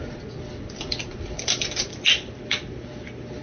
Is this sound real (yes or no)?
yes